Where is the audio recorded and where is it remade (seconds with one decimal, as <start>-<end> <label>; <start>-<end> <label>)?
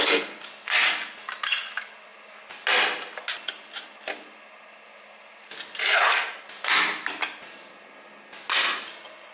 0.0-9.3 recorded